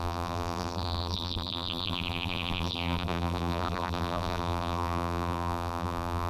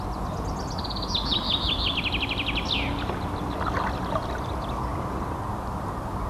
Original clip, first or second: second